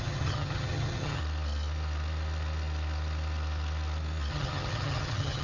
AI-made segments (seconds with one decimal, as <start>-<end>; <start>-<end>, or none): 0.0-1.2; 4.3-5.4